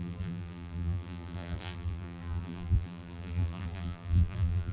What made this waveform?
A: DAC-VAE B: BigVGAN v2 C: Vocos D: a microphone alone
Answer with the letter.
B